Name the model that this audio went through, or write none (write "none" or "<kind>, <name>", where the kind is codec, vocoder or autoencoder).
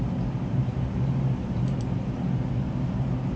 none